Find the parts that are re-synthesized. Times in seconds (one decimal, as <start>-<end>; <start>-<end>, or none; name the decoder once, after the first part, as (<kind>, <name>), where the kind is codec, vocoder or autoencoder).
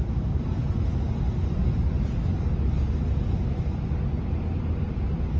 none